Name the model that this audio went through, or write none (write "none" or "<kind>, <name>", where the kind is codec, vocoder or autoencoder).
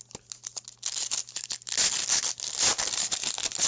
none